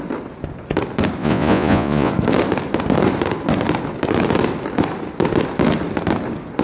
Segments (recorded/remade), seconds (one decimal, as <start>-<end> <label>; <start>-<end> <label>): 0.0-1.2 recorded; 1.2-2.1 remade; 2.1-6.6 recorded